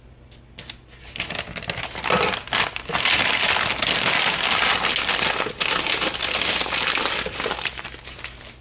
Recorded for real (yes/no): yes